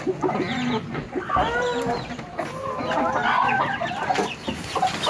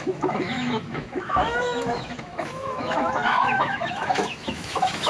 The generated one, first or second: second